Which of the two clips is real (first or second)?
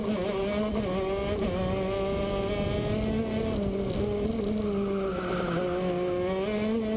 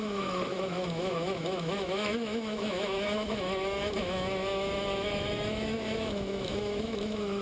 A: first